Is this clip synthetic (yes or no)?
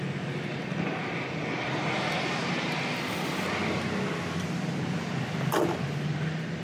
no